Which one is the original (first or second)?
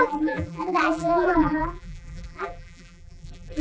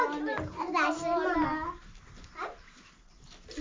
second